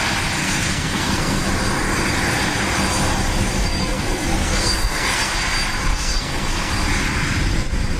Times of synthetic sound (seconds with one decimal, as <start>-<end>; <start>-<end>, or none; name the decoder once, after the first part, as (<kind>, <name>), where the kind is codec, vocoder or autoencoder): 0.4-1.4 (codec, SNAC); 3.6-5.3; 5.9-6.7